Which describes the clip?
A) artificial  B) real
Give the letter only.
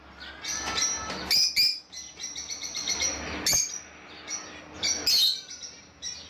B